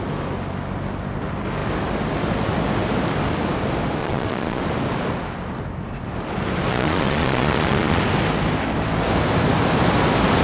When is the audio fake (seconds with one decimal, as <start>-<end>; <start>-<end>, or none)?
4.0-4.6; 6.7-8.0